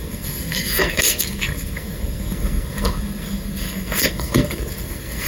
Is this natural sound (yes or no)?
no